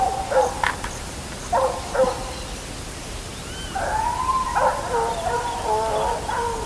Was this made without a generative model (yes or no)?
yes